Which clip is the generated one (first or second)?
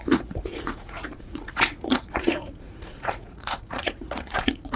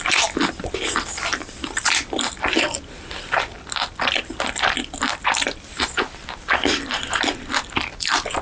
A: first